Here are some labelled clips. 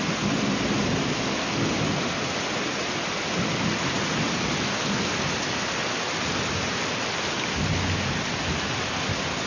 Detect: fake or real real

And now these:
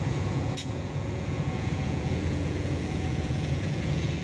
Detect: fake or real fake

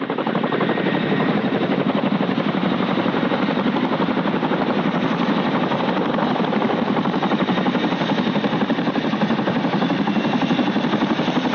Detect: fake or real real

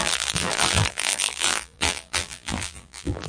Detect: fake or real fake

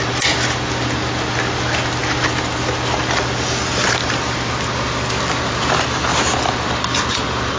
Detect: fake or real real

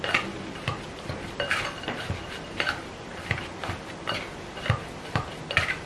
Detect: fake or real real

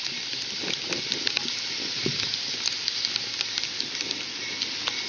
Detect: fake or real real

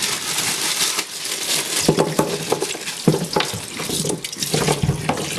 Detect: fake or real real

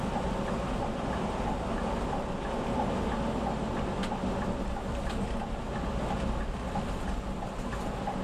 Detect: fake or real real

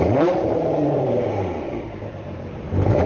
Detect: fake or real fake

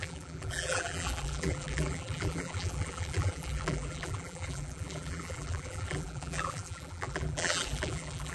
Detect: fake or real fake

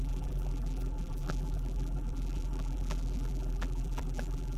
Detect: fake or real fake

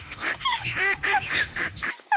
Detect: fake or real fake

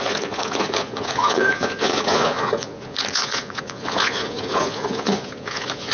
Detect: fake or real fake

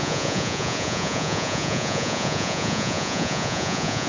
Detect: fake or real fake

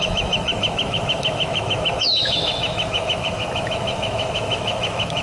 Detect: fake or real fake